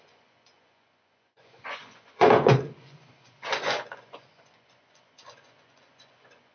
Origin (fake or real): fake